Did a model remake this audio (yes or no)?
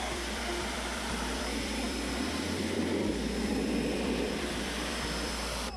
yes